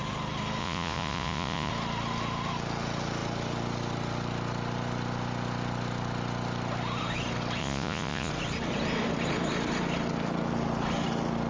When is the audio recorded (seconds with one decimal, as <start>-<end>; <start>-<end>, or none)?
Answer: 0.0-0.6; 1.7-7.6; 8.3-11.5